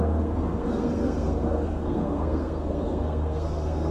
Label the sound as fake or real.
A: fake